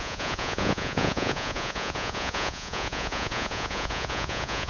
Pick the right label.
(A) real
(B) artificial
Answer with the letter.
B